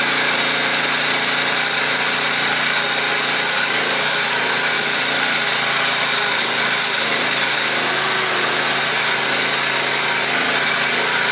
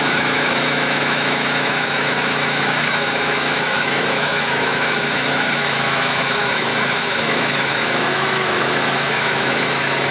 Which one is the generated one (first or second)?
second